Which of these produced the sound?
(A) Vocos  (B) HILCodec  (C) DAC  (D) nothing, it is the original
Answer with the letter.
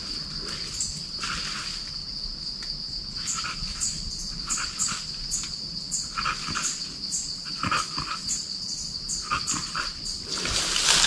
D